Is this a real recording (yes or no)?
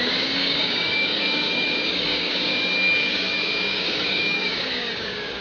no